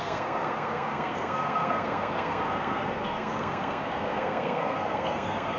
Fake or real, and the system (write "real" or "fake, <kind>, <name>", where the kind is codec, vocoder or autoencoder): fake, codec, SNAC